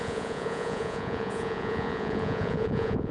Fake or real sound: fake